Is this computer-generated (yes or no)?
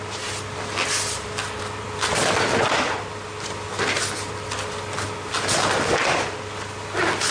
no